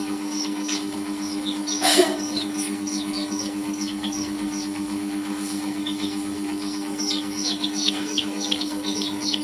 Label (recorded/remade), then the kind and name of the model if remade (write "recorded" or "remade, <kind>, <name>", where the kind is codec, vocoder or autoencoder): remade, codec, SNAC